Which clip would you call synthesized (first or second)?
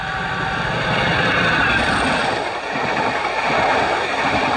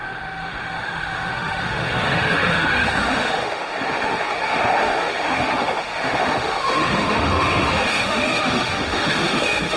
second